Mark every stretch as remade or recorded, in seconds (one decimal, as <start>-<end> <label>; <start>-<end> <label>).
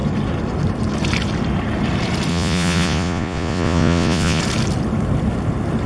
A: 0.0-2.3 recorded; 2.3-4.4 remade; 4.4-5.9 recorded